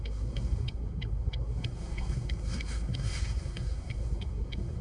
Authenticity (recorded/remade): remade